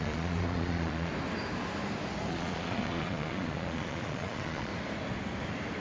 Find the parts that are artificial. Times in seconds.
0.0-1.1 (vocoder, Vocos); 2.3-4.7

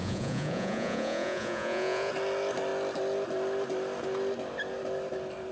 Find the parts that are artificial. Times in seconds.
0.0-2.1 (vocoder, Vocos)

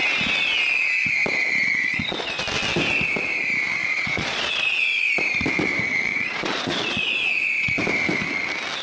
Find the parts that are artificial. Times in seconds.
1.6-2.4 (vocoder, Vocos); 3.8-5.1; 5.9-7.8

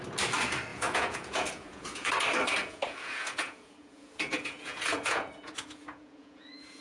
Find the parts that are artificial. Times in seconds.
0.7-2.1 (vocoder, Vocos); 2.6-6.8

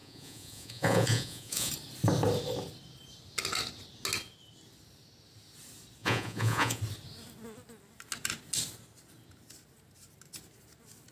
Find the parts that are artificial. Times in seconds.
0.0-1.7 (vocoder, Vocos); 6.0-6.8

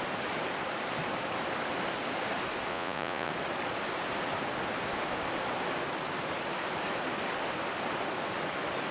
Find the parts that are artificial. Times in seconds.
2.7-3.3 (vocoder, Vocos)

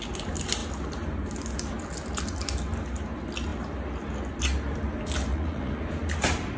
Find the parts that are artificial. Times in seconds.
5.3-5.8 (vocoder, Vocos)